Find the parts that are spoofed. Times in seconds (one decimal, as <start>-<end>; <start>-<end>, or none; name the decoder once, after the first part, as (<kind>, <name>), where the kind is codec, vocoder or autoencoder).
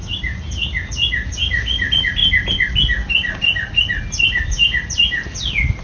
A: none